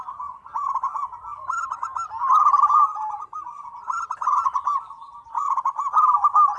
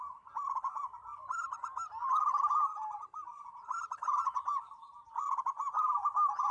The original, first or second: first